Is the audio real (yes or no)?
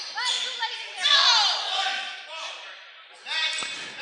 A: yes